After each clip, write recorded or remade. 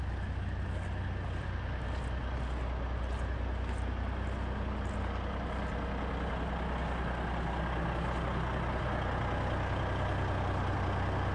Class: recorded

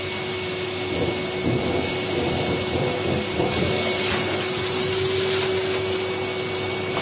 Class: recorded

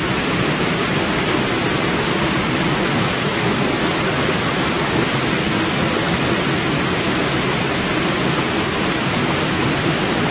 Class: recorded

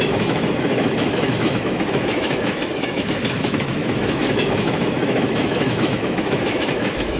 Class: remade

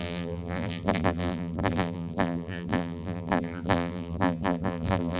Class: remade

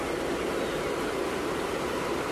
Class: recorded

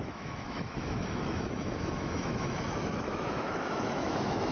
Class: remade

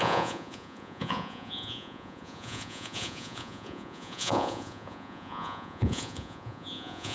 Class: remade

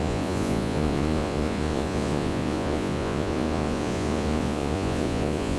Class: remade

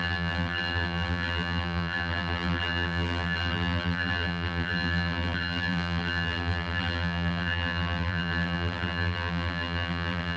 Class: remade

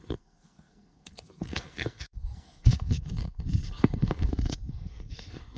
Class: remade